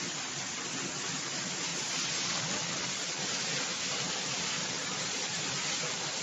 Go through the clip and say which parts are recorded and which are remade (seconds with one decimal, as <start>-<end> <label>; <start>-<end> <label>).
0.0-1.7 recorded; 1.7-3.2 remade; 3.2-4.6 recorded; 4.6-5.4 remade; 5.4-6.2 recorded